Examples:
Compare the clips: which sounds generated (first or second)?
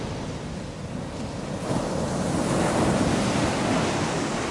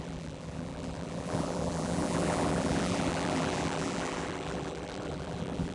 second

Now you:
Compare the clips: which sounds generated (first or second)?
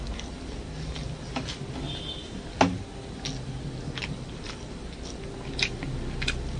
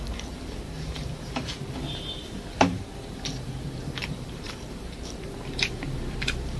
second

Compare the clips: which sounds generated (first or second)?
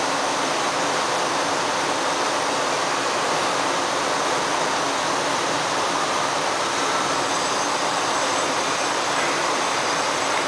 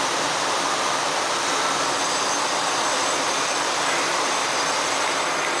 first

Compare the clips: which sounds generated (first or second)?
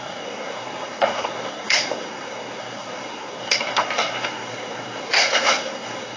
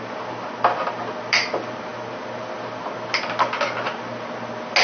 first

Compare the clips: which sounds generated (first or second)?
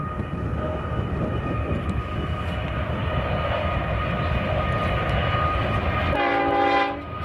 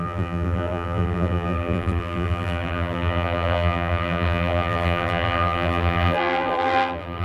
second